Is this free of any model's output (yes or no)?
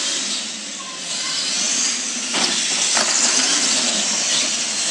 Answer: yes